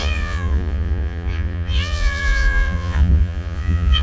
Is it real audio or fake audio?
fake